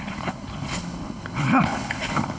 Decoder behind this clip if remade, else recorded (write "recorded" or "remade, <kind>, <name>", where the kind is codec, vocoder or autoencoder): remade, codec, HILCodec